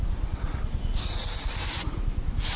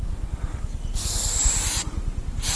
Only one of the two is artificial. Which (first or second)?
first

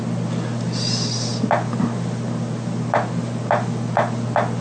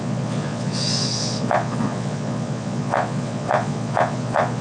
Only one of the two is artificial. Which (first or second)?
second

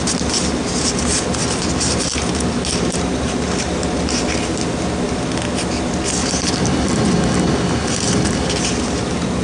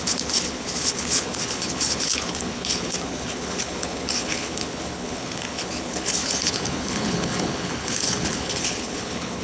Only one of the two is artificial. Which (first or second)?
second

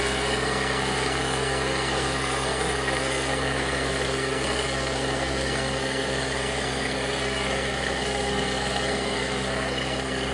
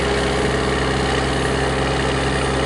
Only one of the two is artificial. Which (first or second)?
first